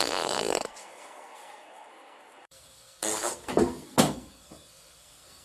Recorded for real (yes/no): no